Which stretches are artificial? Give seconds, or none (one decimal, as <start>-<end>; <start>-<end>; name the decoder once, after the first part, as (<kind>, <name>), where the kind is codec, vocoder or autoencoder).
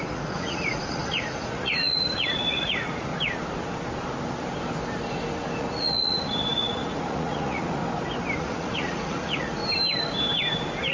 0.0-3.1 (vocoder, Vocos); 5.6-7.8; 8.4-9.6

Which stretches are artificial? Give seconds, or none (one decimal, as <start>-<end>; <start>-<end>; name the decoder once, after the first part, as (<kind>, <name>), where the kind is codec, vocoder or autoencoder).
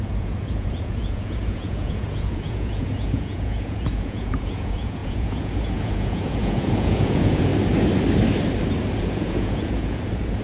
0.0-7.5 (vocoder, Vocos); 9.0-10.4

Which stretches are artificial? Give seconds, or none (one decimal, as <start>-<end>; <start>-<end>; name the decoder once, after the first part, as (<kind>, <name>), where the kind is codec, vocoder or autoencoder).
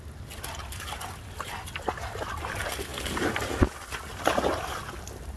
none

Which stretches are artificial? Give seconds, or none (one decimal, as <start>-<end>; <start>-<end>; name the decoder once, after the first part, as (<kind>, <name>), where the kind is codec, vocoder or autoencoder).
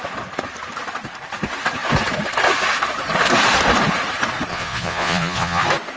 4.5-5.6 (vocoder, Vocos)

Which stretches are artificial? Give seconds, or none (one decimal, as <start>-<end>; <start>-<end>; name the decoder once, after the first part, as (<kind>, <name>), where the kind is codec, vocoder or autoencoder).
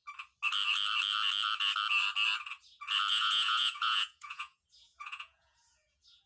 3.1-6.3 (vocoder, Vocos)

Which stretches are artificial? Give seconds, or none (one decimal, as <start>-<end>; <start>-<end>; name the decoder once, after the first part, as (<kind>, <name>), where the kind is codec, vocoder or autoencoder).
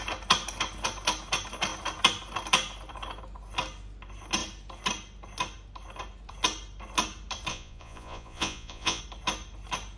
7.5-9.0 (vocoder, Vocos)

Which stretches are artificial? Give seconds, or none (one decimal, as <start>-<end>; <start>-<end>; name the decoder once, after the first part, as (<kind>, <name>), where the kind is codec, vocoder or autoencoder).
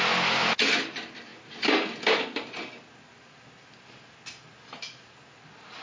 none